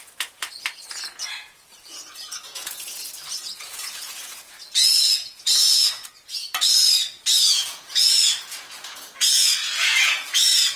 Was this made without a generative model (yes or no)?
no